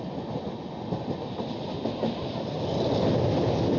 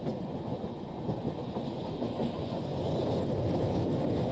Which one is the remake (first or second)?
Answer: second